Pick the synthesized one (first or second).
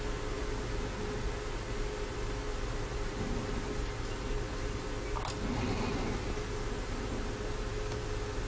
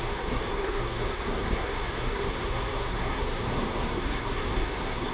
second